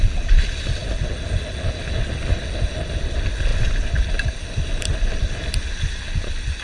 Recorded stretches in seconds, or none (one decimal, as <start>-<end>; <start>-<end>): 0.0-6.6

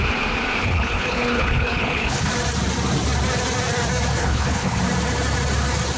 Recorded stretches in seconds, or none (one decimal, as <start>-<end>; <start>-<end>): 0.0-0.6; 2.3-4.2; 4.8-6.0

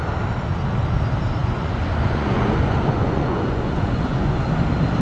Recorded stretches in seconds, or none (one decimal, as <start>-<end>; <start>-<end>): 0.0-1.4; 4.4-5.0

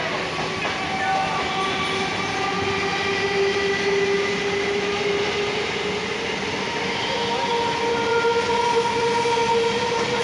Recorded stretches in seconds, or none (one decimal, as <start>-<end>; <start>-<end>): 0.0-10.2